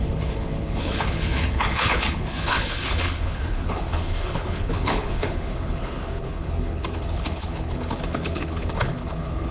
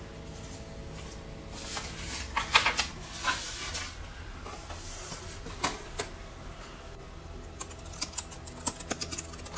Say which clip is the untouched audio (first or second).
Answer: second